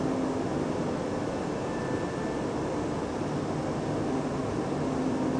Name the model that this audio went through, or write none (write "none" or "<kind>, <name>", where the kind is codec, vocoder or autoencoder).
none